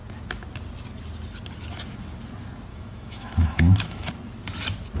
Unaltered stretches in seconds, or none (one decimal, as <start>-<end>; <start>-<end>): 0.0-2.7; 4.1-5.0